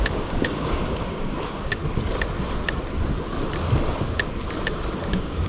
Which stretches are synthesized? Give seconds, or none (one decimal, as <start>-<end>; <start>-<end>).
0.0-1.8; 5.1-5.5